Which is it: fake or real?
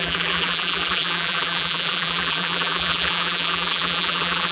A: fake